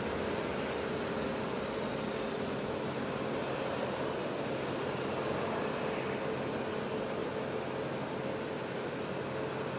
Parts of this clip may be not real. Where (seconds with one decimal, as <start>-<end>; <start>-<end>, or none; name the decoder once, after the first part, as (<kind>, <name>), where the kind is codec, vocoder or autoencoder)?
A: none